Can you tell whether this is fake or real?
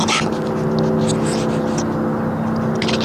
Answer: real